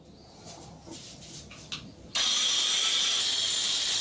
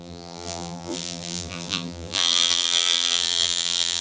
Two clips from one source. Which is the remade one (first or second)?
second